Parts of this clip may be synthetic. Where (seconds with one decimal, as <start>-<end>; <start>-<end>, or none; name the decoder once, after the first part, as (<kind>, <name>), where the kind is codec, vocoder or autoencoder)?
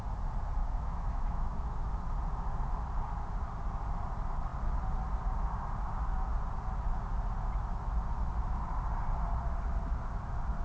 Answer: 0.6-1.9 (autoencoder, DAC-VAE)